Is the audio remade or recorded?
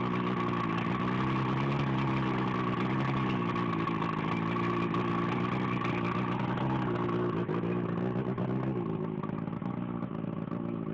recorded